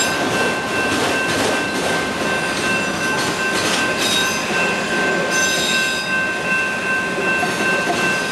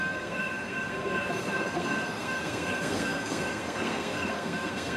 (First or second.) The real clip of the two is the first